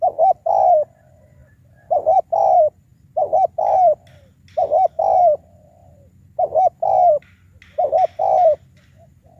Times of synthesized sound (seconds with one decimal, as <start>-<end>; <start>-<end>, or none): 1.4-2.4; 2.9-3.7